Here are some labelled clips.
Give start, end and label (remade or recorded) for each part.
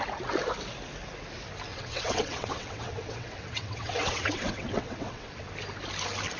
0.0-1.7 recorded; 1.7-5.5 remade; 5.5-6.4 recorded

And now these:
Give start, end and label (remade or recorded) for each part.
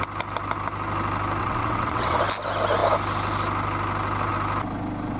0.0-1.4 recorded; 1.4-2.2 remade; 2.2-5.2 recorded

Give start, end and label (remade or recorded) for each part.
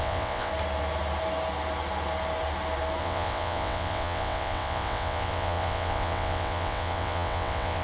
0.0-0.5 remade; 0.5-3.0 recorded; 3.0-7.8 remade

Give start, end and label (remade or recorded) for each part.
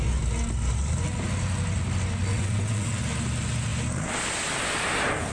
0.0-2.3 recorded; 2.3-3.0 remade; 3.0-5.3 recorded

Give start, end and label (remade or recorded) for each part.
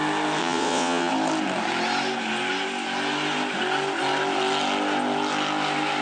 0.0-0.4 recorded; 0.4-1.1 remade; 1.1-6.0 recorded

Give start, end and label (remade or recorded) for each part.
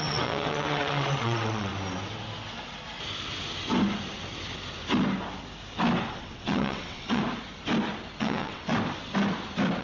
0.0-1.7 remade; 1.7-6.1 recorded; 6.1-7.2 remade; 7.2-8.2 recorded; 8.2-8.7 remade; 8.7-9.8 recorded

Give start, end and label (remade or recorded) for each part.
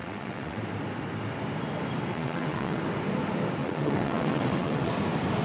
0.0-0.6 remade; 0.6-2.1 recorded; 2.1-2.8 remade; 2.8-3.6 recorded; 3.6-4.9 remade; 4.9-5.4 recorded